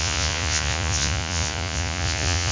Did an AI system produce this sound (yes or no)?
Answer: yes